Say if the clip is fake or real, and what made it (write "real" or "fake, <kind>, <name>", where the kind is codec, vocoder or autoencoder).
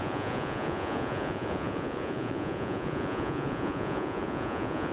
fake, vocoder, Vocos